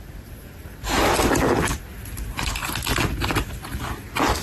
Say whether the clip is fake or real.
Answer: real